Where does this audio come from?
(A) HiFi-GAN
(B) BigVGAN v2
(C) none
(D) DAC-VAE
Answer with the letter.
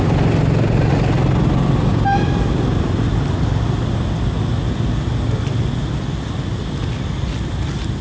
C